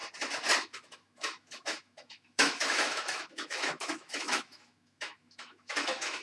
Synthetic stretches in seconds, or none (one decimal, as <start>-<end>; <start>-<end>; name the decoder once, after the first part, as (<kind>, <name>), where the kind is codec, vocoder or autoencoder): 0.6-6.2 (autoencoder, DAC-VAE)